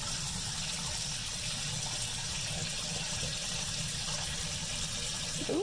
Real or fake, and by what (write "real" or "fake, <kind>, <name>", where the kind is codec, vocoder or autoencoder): real